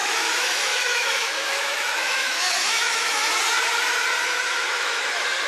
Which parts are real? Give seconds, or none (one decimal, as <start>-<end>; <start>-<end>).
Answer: 3.3-4.2; 5.1-5.5